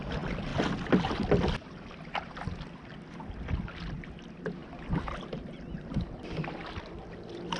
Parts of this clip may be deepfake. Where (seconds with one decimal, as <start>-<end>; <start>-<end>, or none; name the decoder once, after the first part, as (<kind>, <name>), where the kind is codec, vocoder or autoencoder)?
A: none